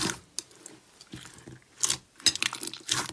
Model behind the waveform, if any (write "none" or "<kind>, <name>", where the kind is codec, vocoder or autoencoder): none